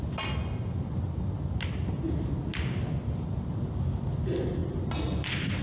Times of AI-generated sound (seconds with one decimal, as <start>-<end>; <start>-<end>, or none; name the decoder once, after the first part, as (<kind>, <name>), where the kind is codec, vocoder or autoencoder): none